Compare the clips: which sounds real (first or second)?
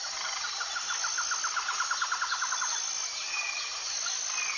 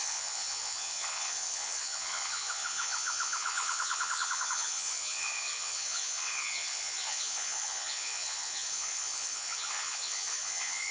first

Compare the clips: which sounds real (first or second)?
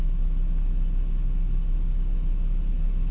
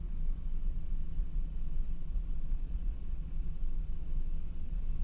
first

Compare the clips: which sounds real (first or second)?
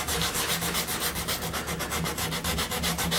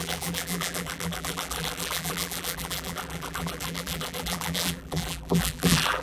first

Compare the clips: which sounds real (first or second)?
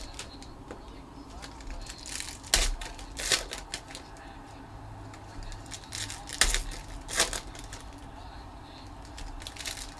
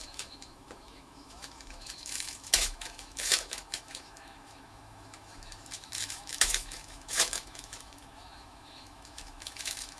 first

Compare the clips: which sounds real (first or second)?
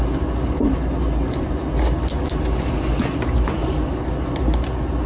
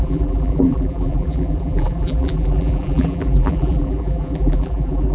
first